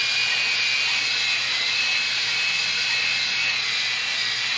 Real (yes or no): yes